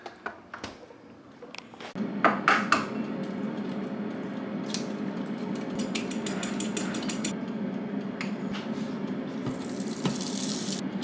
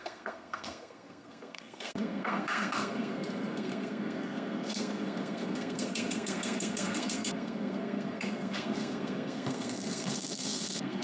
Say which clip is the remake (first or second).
second